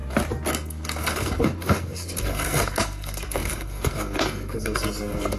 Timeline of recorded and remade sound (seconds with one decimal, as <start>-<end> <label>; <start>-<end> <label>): 0.0-0.5 recorded; 0.5-5.4 remade